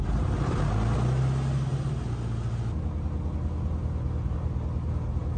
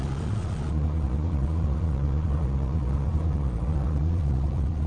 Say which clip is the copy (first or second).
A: second